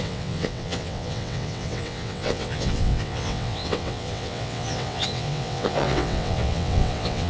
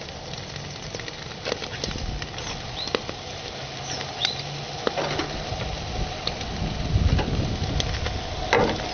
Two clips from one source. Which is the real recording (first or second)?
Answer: second